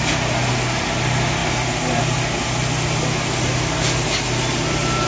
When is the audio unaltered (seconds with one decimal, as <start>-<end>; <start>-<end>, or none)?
0.0-5.1